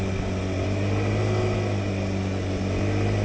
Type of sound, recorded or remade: recorded